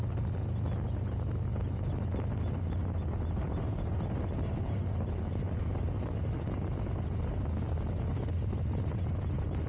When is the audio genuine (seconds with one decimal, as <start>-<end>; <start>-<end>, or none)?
0.0-9.7